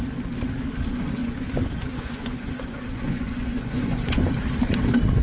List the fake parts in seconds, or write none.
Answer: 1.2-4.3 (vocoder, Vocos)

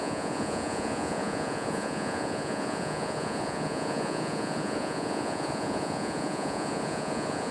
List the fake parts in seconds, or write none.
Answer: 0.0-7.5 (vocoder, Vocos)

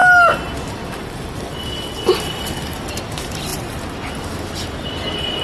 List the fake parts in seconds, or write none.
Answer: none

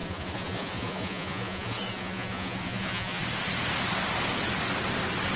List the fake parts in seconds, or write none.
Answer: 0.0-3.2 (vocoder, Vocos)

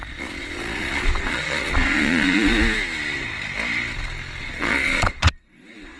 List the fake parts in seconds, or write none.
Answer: 0.0-2.5 (vocoder, Vocos); 4.4-6.0

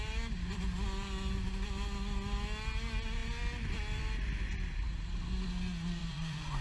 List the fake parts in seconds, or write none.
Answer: 6.0-6.6 (vocoder, Vocos)